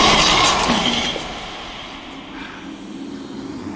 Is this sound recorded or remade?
recorded